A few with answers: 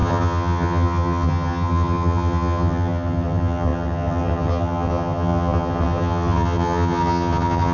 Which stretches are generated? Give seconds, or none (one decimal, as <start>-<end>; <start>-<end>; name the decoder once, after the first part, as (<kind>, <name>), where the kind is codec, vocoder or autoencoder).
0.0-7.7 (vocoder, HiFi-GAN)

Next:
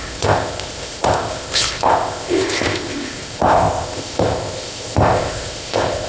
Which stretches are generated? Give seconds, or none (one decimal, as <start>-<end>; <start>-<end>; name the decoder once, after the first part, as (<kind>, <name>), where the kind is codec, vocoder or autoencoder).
0.0-6.1 (codec, ZipCodec)

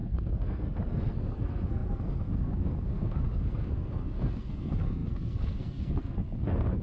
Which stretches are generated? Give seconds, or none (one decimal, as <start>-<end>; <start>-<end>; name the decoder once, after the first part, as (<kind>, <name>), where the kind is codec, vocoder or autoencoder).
0.0-6.8 (codec, SNAC)

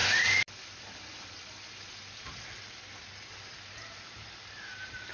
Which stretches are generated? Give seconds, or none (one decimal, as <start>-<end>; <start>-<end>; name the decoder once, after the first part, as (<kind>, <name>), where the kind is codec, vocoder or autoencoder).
none

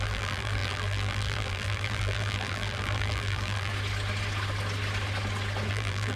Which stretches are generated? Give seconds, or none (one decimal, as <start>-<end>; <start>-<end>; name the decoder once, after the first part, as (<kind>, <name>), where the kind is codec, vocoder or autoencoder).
0.0-3.7 (vocoder, BigVGAN v2); 5.7-6.2

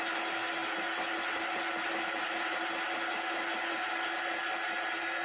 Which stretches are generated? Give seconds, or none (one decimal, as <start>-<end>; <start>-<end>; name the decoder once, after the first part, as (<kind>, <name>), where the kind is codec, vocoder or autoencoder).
none